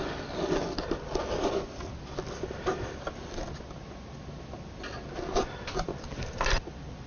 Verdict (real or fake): real